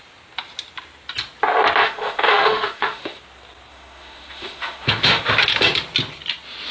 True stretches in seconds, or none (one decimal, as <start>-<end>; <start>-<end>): 0.0-1.8; 3.2-3.7; 5.3-6.7